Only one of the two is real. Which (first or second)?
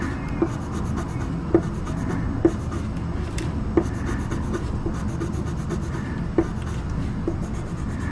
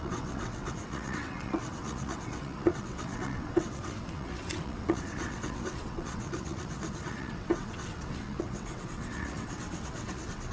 first